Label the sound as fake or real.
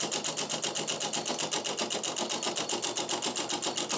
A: real